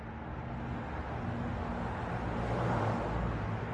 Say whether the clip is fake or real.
real